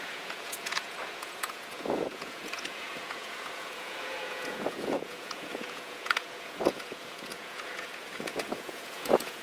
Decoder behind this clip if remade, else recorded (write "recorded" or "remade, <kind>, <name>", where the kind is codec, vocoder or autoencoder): remade, vocoder, Vocos